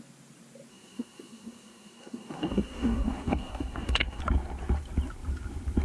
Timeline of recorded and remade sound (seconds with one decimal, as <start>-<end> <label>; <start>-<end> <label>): 0.0-0.7 recorded; 0.7-4.2 remade; 4.2-5.8 recorded